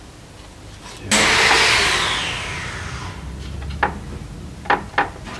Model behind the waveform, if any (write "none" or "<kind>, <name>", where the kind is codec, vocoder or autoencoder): none